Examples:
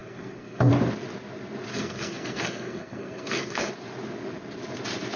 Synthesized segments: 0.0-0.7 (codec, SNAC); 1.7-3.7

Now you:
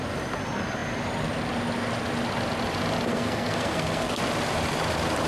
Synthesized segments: 3.1-4.2 (codec, SNAC)

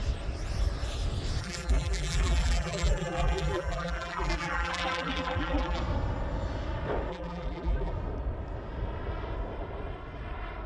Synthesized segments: 1.4-5.8 (vocoder, BigVGAN v2); 7.1-7.9